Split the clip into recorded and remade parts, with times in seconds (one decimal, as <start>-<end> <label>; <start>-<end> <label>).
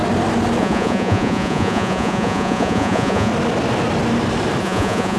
0.0-0.6 recorded; 0.6-3.3 remade; 3.3-4.6 recorded; 4.6-5.2 remade